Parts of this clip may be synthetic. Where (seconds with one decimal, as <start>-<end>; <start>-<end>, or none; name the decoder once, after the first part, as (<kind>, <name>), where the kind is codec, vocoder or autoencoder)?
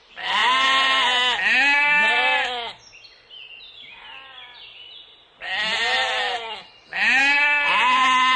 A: none